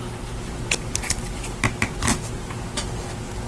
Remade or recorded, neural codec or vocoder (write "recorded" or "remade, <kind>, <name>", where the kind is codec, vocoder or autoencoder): recorded